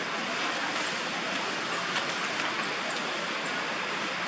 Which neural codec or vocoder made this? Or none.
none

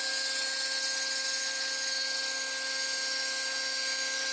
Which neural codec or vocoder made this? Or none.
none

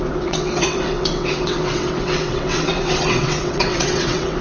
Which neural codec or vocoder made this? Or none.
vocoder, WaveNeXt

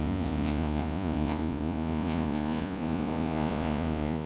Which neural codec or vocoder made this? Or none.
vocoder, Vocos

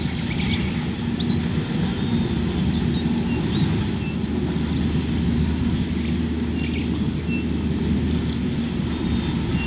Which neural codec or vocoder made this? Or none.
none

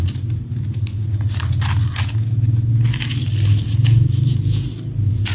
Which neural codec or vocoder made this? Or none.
none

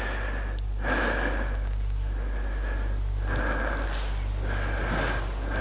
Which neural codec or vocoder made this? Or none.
none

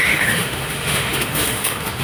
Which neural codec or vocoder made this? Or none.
autoencoder, DAC-VAE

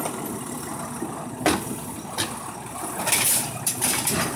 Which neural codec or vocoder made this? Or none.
none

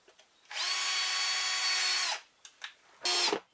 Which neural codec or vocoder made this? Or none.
none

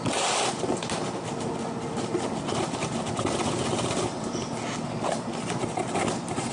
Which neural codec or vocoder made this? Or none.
none